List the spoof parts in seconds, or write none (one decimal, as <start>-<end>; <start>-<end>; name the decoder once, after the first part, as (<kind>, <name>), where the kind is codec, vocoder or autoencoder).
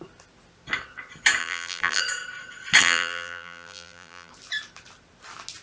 1.4-2.0 (vocoder, BigVGAN v2); 2.8-4.3